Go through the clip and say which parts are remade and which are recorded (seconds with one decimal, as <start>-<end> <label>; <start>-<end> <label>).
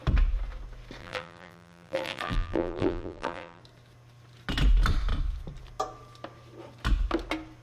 0.0-1.0 recorded; 1.0-3.6 remade; 3.6-7.6 recorded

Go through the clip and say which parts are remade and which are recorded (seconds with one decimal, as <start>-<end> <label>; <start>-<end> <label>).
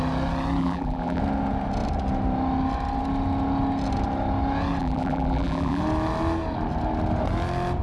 0.0-0.6 recorded; 0.6-1.2 remade; 1.2-4.8 recorded; 4.8-5.8 remade; 5.8-7.8 recorded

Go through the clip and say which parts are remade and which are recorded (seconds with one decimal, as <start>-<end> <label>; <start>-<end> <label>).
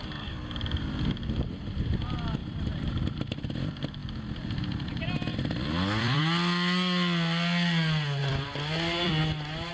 0.0-2.4 recorded; 2.4-3.3 remade; 3.3-5.3 recorded; 5.3-6.2 remade; 6.2-8.2 recorded; 8.2-9.1 remade; 9.1-9.7 recorded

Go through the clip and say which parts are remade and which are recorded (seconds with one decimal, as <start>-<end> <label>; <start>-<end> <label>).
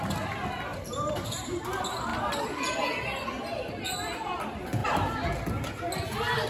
0.0-0.7 recorded; 0.7-1.6 remade; 1.6-6.5 recorded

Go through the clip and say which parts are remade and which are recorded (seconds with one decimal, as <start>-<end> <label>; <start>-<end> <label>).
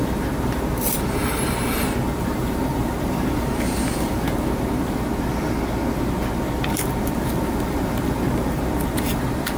0.0-5.1 remade; 5.1-6.7 recorded; 6.7-9.6 remade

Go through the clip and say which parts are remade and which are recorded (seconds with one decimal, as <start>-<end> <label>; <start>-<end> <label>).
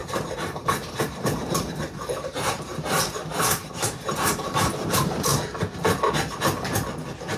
0.0-5.3 remade; 5.3-7.4 recorded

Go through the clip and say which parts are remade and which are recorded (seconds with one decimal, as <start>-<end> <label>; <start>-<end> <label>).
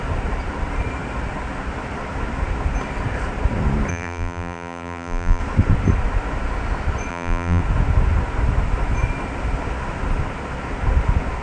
0.0-3.9 recorded; 3.9-5.4 remade; 5.4-7.1 recorded; 7.1-7.6 remade; 7.6-11.4 recorded